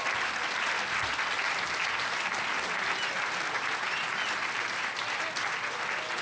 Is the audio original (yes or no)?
yes